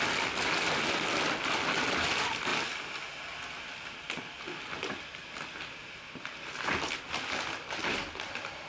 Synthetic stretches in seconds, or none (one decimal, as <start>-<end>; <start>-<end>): none